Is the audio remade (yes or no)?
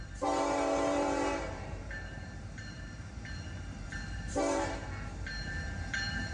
yes